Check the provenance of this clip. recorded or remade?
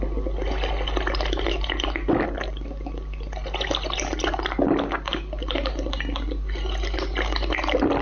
recorded